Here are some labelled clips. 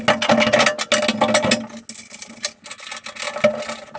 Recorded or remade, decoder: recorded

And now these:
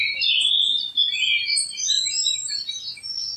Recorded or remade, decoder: recorded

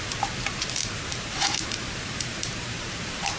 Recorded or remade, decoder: remade, vocoder, BigVGAN v2